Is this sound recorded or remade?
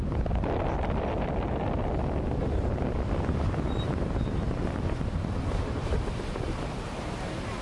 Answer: recorded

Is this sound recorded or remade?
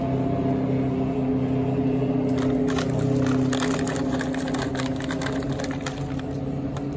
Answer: recorded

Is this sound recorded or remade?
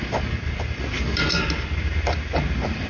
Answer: recorded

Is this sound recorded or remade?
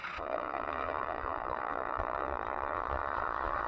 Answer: remade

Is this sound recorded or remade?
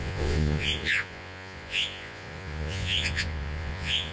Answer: remade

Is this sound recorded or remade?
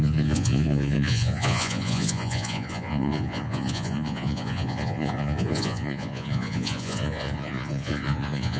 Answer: remade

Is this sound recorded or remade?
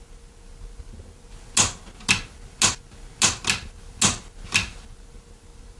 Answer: recorded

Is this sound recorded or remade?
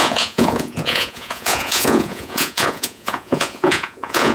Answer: remade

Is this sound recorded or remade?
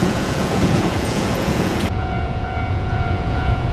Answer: remade